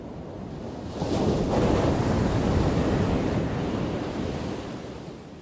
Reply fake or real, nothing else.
real